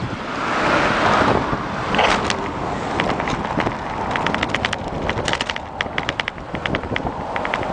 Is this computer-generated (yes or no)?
no